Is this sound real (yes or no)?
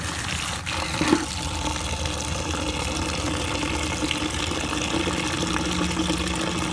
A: yes